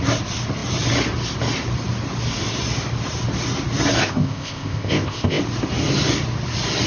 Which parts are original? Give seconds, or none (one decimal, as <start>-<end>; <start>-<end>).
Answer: 0.0-4.0; 5.4-6.9